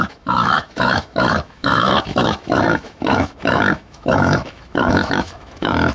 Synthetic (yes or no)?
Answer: yes